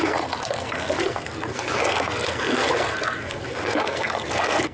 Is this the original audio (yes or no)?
no